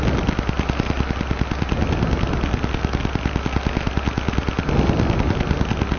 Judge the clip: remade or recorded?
recorded